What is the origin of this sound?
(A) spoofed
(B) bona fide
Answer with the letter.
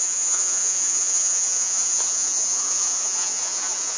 A